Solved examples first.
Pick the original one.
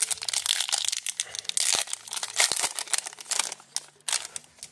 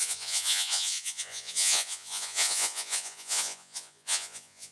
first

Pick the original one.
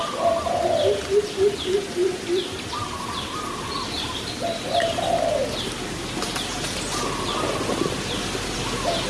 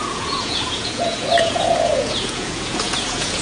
first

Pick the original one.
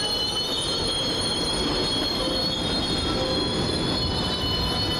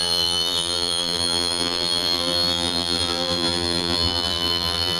first